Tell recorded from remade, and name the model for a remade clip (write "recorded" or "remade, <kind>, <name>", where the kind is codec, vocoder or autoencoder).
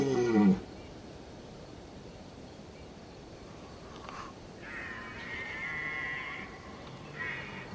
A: remade, vocoder, BigVGAN v2